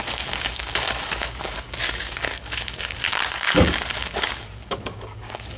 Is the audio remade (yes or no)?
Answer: yes